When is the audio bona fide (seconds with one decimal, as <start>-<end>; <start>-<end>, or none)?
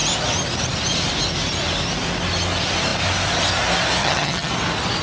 0.0-4.0; 4.5-5.0